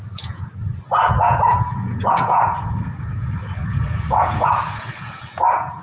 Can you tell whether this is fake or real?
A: fake